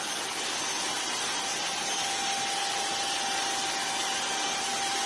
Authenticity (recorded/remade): recorded